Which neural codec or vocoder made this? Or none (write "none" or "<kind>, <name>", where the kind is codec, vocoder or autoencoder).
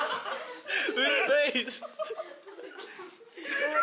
none